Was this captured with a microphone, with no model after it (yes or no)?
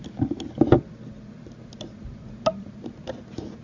yes